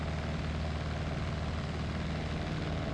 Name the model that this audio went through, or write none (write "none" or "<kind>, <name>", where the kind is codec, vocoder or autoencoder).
none